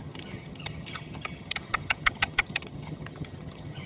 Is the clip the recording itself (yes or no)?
no